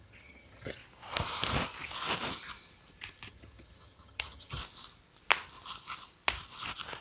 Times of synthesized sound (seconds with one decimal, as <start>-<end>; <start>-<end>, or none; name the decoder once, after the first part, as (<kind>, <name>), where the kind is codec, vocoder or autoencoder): 0.0-0.8 (vocoder, HiFi-GAN); 3.3-4.6